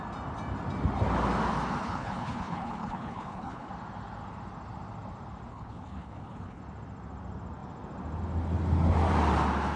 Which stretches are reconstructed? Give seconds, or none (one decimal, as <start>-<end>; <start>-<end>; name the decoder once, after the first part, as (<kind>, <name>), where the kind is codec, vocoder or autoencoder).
1.8-3.7 (codec, HILCodec); 5.5-6.6